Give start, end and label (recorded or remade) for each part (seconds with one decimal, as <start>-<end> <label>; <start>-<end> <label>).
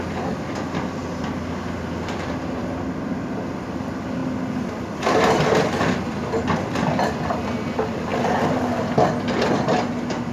0.0-4.2 remade; 4.2-5.8 recorded; 5.8-8.1 remade; 8.1-9.1 recorded; 9.1-10.3 remade